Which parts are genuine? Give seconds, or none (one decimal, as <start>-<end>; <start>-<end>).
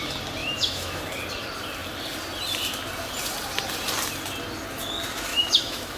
0.0-0.4; 1.0-5.3